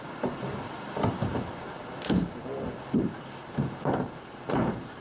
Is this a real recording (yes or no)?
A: no